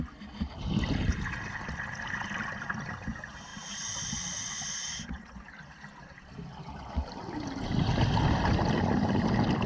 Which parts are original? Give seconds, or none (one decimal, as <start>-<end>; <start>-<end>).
0.0-9.7